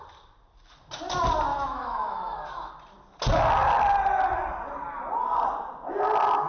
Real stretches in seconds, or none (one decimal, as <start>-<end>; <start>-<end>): 0.0-1.5; 2.7-6.5